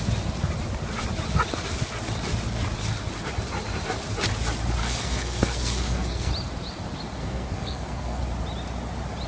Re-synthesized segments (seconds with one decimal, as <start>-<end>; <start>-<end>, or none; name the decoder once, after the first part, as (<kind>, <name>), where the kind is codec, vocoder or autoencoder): 4.8-6.3 (codec, SNAC); 7.2-8.2

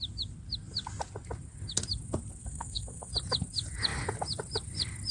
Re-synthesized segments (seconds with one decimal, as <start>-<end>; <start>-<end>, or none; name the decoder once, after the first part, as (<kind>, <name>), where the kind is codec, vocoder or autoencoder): 2.4-3.1 (codec, SNAC)